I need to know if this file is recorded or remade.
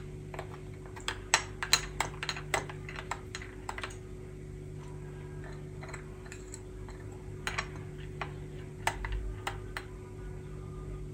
recorded